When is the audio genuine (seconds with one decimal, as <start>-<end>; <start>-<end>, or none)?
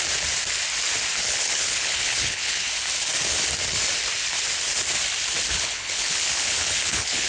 0.0-1.2; 2.7-5.5